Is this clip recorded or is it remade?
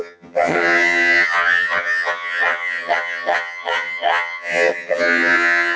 remade